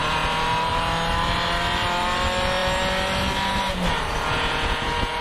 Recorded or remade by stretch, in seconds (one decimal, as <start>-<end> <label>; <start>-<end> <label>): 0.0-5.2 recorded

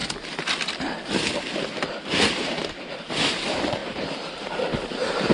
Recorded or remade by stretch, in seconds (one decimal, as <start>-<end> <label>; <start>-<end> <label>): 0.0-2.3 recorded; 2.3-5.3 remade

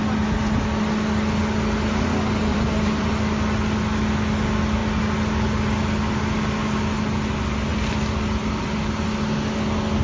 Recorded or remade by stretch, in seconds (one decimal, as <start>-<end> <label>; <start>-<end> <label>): 0.0-2.5 recorded; 2.5-3.1 remade; 3.1-10.0 recorded

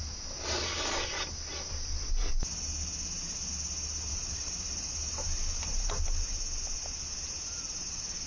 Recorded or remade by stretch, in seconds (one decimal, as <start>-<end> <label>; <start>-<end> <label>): 0.0-4.1 recorded; 4.1-6.0 remade; 6.0-8.3 recorded